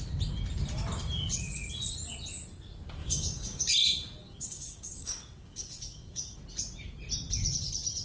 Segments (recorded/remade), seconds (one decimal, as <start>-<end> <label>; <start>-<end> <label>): 0.0-3.0 recorded; 3.0-3.7 remade; 3.7-4.2 recorded; 4.2-6.4 remade; 6.4-8.0 recorded